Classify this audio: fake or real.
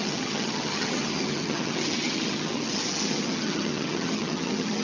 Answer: fake